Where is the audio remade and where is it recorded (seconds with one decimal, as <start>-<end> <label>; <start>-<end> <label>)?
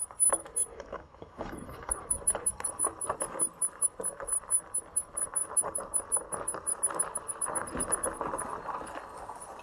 0.0-0.7 recorded; 0.7-2.2 remade; 2.2-9.6 recorded